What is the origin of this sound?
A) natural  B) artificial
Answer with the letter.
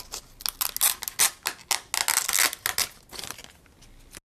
A